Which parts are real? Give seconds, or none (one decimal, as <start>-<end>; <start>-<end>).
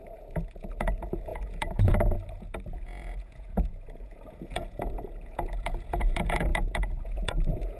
none